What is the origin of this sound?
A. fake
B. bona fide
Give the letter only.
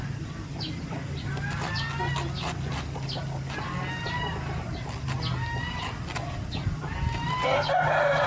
B